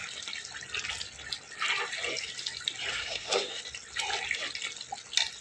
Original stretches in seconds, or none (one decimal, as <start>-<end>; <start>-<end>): 0.0-2.9; 3.6-5.4